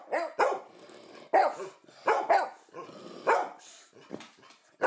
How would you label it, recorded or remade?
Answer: recorded